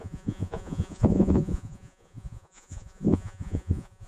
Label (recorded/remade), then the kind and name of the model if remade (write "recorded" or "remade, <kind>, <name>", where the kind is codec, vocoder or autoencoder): remade, vocoder, Vocos